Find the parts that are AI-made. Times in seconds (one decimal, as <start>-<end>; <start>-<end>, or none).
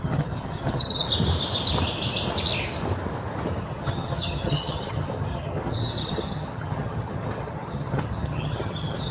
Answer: 0.0-1.0; 3.6-9.1